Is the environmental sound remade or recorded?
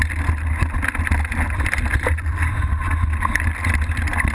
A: recorded